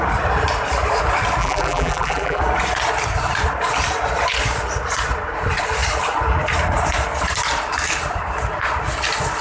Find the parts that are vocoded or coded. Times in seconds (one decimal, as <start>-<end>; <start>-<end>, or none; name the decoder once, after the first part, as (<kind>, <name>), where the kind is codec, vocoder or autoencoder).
1.4-2.4 (vocoder, BigVGAN v2)